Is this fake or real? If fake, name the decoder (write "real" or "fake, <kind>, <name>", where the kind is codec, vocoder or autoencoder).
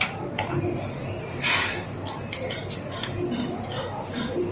real